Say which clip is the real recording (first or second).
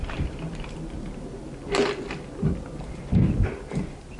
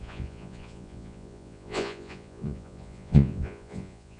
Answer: first